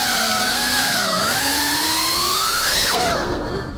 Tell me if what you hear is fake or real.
fake